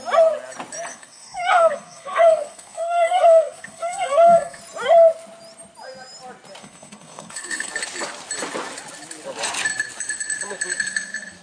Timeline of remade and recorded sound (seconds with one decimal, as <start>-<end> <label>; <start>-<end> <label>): 0.0-0.9 recorded; 0.9-4.6 remade; 4.6-6.6 recorded; 6.6-7.7 remade; 7.7-11.4 recorded